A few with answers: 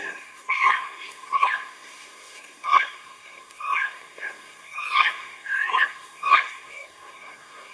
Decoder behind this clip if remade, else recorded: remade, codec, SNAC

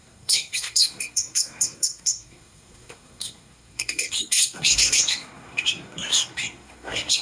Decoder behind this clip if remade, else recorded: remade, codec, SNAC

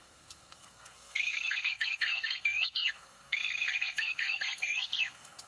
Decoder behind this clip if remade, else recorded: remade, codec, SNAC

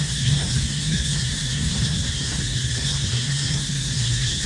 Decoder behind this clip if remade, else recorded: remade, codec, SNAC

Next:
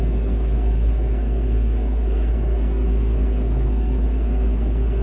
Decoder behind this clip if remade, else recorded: remade, codec, SNAC